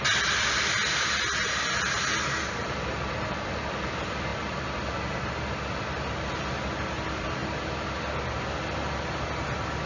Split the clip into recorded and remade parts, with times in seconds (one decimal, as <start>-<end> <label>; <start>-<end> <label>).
0.0-9.9 recorded